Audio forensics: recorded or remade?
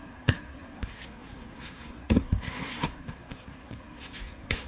remade